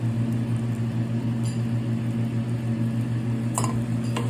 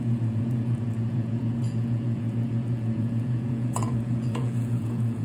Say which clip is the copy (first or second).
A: second